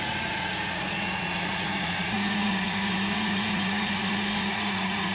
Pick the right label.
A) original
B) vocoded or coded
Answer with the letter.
B